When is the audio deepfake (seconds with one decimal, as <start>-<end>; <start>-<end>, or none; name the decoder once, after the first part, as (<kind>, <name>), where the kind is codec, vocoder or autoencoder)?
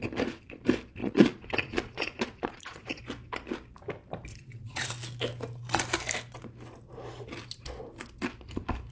1.0-3.0 (vocoder, Vocos); 4.3-4.9